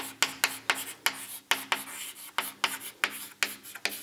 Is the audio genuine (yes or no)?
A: yes